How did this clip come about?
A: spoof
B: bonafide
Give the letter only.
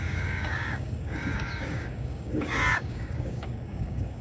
A